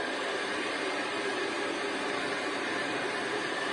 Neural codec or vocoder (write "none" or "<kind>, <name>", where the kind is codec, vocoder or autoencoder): vocoder, BigVGAN v2